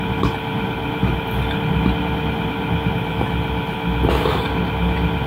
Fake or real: real